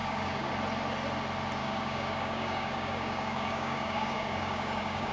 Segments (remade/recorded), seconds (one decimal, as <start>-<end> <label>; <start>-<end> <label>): 0.0-0.5 remade; 0.5-1.6 recorded; 1.6-5.1 remade